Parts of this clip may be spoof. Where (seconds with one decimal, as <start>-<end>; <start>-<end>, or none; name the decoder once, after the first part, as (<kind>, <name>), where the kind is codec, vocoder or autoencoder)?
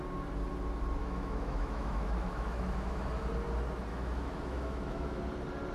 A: 1.0-3.0 (autoencoder, DAC-VAE); 3.9-5.2